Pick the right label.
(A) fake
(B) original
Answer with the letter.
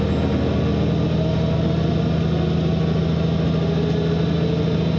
B